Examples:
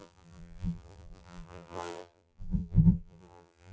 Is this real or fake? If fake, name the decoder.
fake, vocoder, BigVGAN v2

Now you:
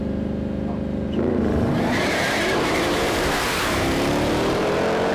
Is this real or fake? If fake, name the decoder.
fake, vocoder, BigVGAN v2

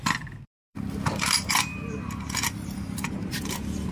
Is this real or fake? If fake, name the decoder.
fake, vocoder, BigVGAN v2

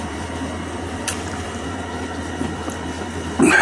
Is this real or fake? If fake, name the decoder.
fake, vocoder, BigVGAN v2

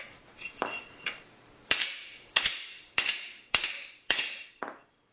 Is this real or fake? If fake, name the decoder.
fake, vocoder, BigVGAN v2